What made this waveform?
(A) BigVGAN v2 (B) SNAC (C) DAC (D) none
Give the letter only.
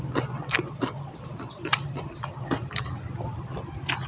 D